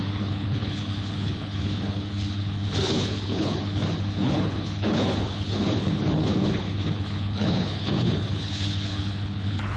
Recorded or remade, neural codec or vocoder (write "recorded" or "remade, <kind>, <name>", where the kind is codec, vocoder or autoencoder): remade, codec, HILCodec